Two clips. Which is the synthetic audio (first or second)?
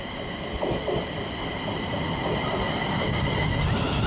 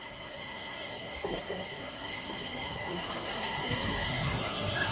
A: second